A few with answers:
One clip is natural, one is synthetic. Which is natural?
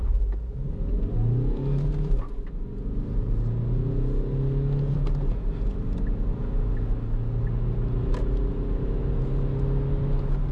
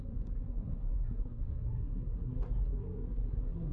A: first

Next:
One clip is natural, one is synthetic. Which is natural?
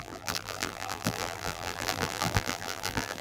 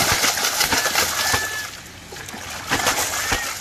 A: second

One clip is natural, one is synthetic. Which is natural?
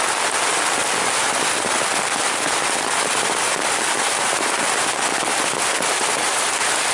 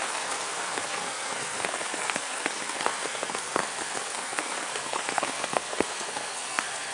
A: first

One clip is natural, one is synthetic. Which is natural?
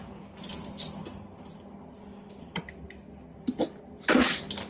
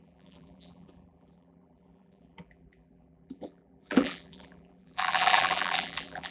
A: first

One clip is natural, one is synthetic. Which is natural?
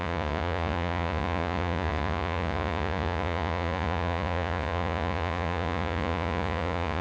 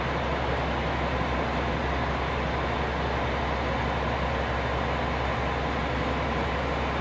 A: second